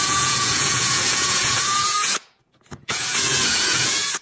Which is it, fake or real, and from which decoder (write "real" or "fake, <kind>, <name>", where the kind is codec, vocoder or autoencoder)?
fake, vocoder, Vocos